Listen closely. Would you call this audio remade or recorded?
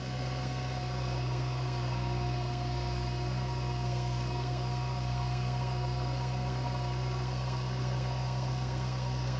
remade